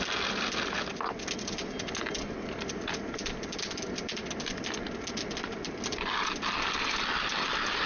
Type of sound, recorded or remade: recorded